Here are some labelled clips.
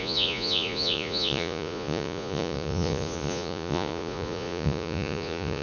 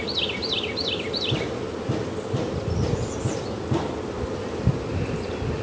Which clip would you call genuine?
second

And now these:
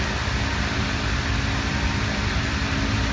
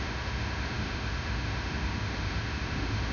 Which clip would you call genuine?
first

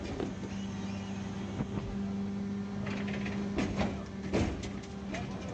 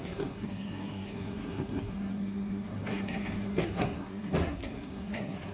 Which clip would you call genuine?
first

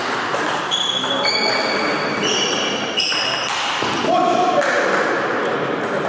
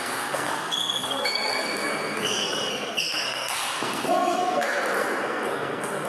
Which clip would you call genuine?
first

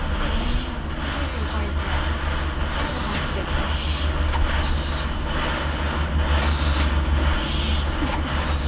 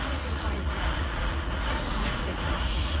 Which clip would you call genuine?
first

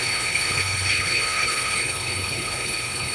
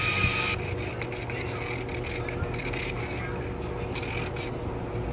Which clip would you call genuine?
second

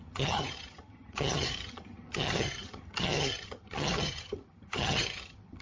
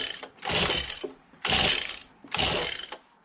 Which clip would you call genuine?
second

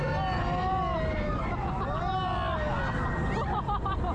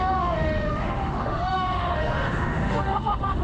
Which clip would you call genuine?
first